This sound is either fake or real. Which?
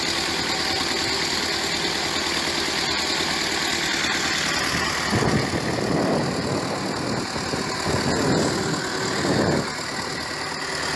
real